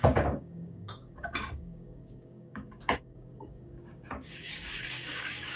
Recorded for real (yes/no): no